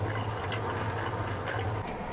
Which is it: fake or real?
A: real